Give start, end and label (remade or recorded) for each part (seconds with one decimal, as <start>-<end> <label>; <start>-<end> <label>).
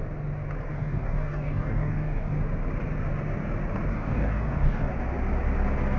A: 0.0-0.7 recorded; 0.7-2.4 remade; 2.4-3.9 recorded; 3.9-4.9 remade; 4.9-6.0 recorded